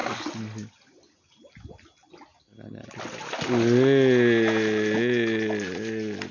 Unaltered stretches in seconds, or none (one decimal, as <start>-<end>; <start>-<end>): 0.0-6.3